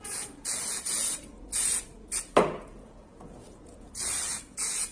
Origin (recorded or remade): remade